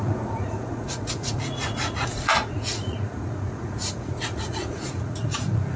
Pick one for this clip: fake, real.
fake